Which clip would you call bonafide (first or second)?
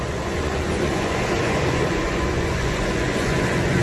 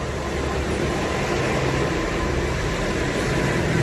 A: second